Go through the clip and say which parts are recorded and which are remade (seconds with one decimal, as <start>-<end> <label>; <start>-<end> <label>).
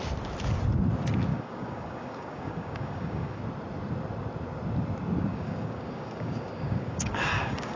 0.0-1.3 recorded; 1.3-3.4 remade; 3.4-5.3 recorded; 5.3-7.8 remade